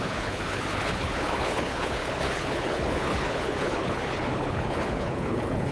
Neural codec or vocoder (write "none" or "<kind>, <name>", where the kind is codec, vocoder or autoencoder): codec, HILCodec